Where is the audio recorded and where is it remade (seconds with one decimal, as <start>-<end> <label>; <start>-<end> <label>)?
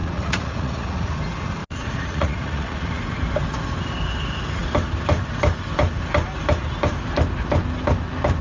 0.0-1.1 remade; 1.1-1.6 recorded; 1.6-3.0 remade; 3.0-8.4 recorded